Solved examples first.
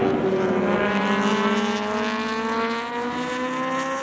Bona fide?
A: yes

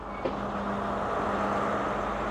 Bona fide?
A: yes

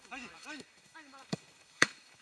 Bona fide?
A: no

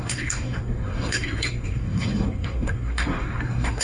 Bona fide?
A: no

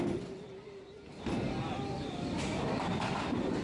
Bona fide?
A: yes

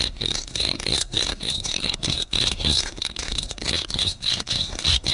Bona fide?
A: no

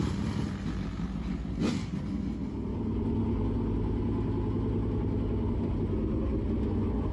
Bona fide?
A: yes